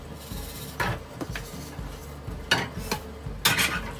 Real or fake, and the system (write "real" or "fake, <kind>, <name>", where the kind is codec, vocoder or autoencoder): real